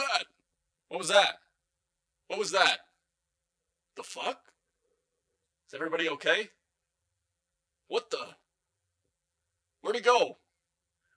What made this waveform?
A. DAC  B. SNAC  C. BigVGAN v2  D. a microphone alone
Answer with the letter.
C